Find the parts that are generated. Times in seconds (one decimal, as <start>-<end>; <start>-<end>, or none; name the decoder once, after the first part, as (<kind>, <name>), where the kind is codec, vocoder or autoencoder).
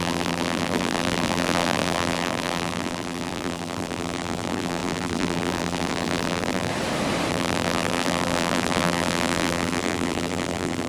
0.0-6.7 (vocoder, BigVGAN v2); 7.3-10.9